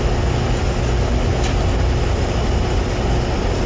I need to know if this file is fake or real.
real